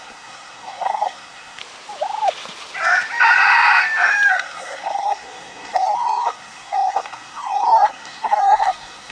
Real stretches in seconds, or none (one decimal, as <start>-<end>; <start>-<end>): 1.6-4.3